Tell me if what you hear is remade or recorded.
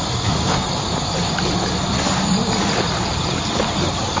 recorded